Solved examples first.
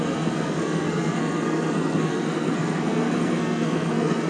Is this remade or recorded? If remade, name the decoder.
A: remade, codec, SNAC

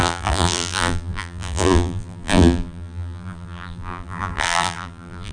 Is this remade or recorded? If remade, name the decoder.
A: remade, vocoder, BigVGAN v2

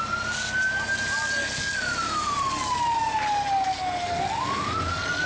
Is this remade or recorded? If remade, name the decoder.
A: recorded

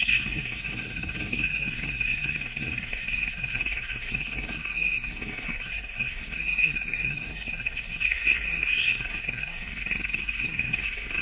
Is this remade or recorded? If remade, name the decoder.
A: remade, codec, SNAC